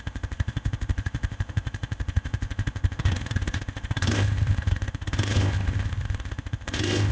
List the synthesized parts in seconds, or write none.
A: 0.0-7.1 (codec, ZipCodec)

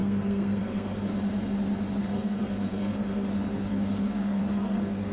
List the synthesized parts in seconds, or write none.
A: 0.0-1.1 (codec, SNAC); 2.0-5.1

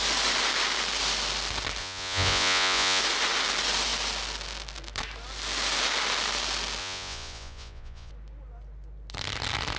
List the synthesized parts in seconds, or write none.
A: 1.8-3.0 (vocoder, Vocos); 6.8-8.1